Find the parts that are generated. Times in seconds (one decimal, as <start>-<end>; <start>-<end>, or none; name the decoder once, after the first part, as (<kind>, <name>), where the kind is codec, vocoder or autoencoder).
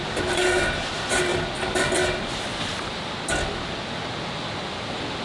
none